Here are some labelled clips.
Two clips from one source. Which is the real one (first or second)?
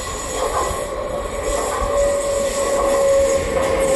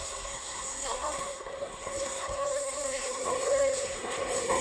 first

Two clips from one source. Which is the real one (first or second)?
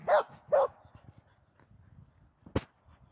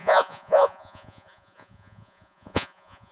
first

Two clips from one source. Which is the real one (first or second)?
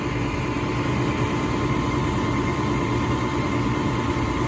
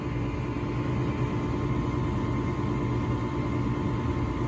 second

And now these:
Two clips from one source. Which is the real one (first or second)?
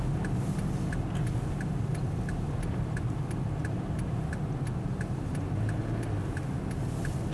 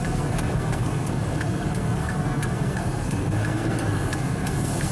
first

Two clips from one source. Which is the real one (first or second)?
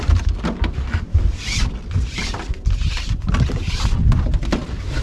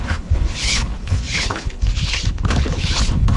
first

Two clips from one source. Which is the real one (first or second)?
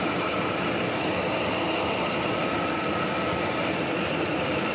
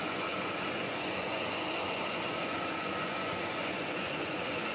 first